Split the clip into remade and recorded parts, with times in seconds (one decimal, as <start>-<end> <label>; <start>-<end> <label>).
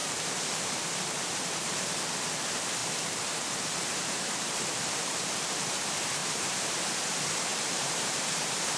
0.0-1.6 remade; 1.6-2.8 recorded; 2.8-5.4 remade; 5.4-6.2 recorded; 6.2-6.8 remade; 6.8-7.5 recorded; 7.5-8.8 remade